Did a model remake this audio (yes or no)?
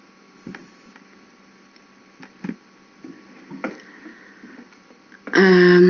no